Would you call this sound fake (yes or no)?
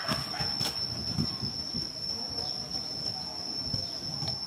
no